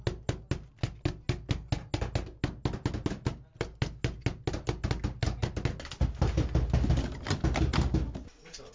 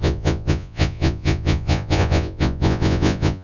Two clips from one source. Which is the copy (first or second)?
second